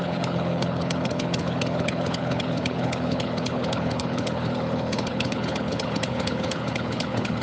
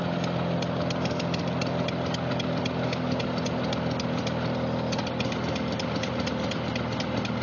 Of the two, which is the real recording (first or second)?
second